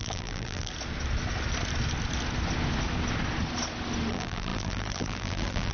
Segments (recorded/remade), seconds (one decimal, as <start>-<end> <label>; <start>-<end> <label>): 0.0-0.7 remade; 0.7-4.1 recorded; 4.1-5.7 remade